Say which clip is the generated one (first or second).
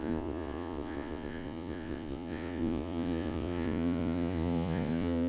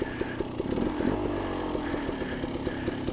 first